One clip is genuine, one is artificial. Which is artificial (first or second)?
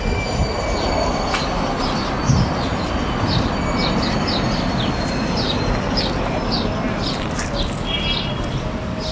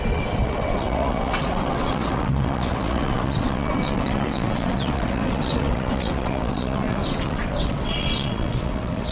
second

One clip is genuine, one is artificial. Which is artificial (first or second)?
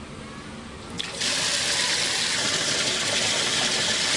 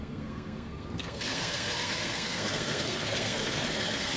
second